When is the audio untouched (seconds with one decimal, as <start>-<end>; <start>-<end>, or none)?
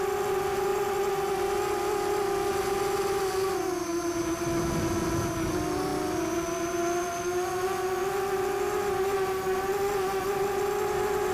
0.0-11.3